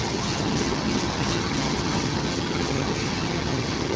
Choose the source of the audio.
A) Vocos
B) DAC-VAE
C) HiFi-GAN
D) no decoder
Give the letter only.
C